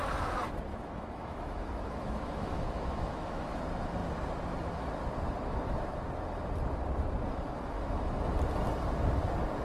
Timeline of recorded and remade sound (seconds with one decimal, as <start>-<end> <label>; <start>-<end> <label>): 0.0-0.7 recorded; 0.7-3.6 remade; 3.6-9.6 recorded

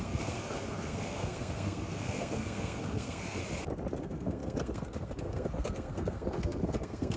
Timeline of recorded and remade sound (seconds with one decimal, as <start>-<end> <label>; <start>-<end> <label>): 0.0-3.4 remade; 3.4-4.0 recorded; 4.0-7.2 remade

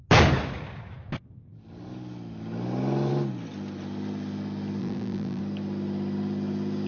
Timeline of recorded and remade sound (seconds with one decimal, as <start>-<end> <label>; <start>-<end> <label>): 0.0-4.8 recorded; 4.8-5.4 remade; 5.4-6.9 recorded

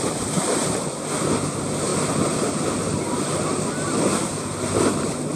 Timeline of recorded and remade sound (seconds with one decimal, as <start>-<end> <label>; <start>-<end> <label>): 0.0-5.3 recorded

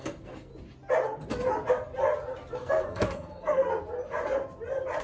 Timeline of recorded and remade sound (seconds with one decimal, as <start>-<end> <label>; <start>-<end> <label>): 0.0-0.5 remade; 0.5-2.5 recorded; 2.5-3.7 remade; 3.7-5.0 recorded